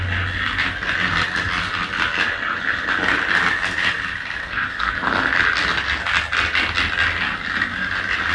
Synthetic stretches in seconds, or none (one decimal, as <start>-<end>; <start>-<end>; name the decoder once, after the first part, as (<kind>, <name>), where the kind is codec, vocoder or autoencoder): 4.4-4.9 (codec, SNAC)